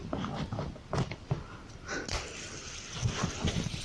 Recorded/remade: recorded